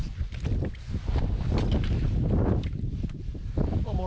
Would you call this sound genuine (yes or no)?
yes